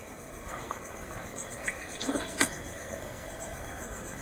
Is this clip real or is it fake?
fake